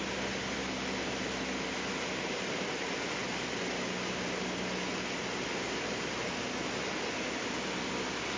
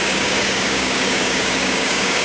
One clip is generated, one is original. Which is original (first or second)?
first